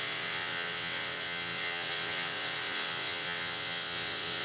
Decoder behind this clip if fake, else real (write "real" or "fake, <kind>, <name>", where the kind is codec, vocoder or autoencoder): fake, vocoder, WaveNeXt